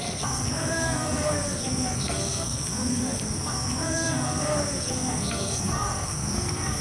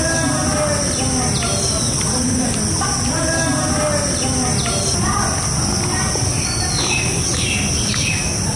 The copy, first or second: first